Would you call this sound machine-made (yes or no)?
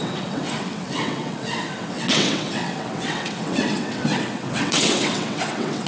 yes